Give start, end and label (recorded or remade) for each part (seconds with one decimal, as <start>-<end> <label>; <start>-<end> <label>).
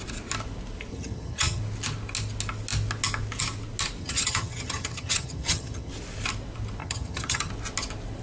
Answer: 0.0-0.9 recorded; 0.9-1.6 remade; 1.6-4.0 recorded; 4.0-5.9 remade; 5.9-6.8 recorded; 6.8-7.5 remade; 7.5-8.2 recorded